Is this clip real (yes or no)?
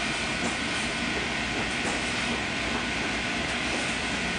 yes